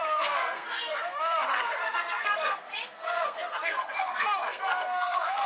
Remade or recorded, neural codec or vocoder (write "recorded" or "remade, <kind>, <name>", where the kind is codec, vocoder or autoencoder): remade, codec, SNAC